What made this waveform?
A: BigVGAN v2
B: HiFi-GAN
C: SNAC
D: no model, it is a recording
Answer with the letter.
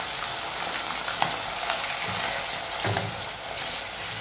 D